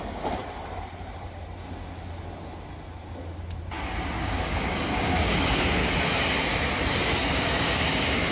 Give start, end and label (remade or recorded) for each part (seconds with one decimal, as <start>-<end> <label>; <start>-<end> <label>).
0.0-0.4 remade; 0.4-4.2 recorded; 4.2-5.8 remade; 5.8-7.0 recorded; 7.0-8.3 remade